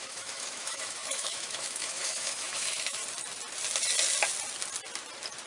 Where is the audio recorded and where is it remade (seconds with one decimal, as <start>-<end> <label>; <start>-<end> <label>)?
0.0-3.0 remade; 3.0-5.5 recorded